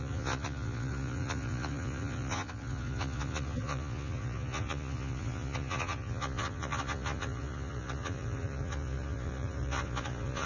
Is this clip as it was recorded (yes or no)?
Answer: no